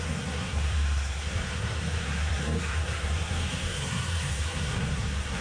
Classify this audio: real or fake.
fake